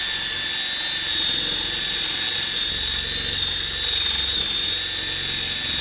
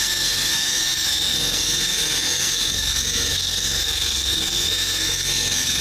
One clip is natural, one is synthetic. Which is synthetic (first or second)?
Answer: second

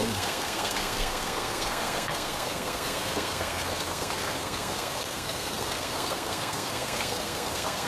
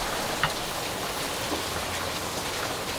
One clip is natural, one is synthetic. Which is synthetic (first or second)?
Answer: first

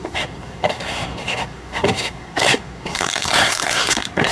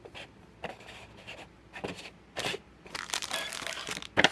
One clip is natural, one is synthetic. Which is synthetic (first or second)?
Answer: first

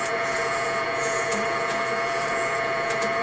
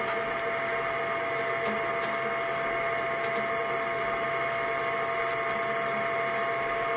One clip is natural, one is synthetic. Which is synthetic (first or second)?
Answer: first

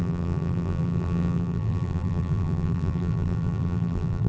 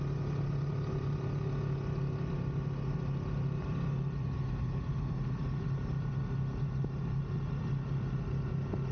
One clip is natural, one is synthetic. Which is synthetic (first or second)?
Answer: first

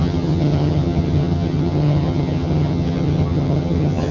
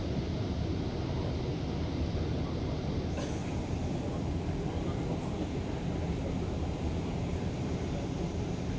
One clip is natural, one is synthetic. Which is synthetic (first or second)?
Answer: first